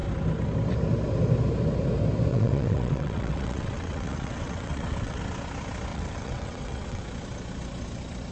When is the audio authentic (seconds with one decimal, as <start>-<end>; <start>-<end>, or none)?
0.0-2.3; 5.2-5.9; 7.0-8.3